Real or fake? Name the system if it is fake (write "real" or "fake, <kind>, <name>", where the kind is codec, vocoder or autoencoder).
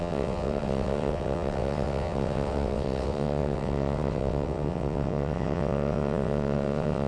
fake, vocoder, WaveNeXt